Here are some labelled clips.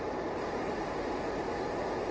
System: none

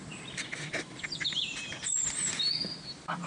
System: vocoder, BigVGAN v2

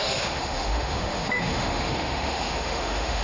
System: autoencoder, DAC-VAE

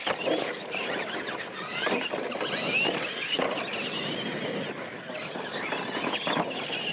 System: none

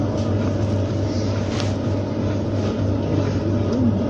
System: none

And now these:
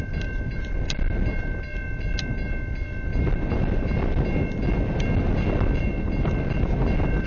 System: none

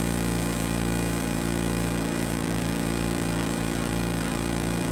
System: vocoder, BigVGAN v2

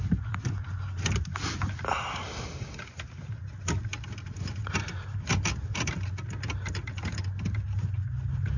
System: none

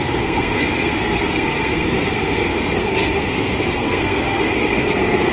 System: codec, SNAC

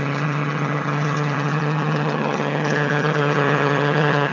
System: vocoder, HiFi-GAN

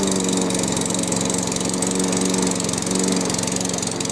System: none